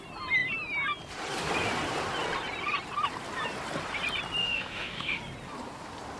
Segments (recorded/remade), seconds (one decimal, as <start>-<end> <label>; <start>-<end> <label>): 0.0-4.4 recorded; 4.4-5.2 remade; 5.2-6.2 recorded